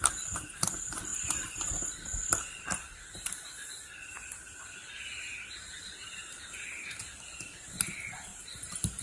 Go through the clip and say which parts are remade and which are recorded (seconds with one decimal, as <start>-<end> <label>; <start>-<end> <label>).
0.0-9.0 recorded